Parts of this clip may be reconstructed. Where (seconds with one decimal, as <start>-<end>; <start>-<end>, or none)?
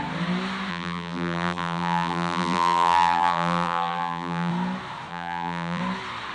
0.7-4.5; 5.1-5.8